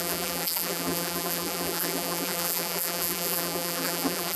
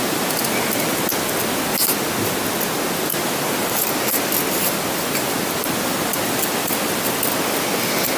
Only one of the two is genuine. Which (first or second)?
second